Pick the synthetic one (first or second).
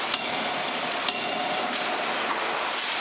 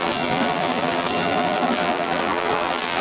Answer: second